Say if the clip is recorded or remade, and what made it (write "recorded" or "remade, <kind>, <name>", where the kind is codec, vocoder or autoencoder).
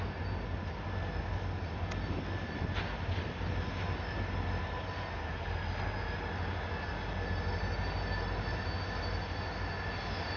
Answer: recorded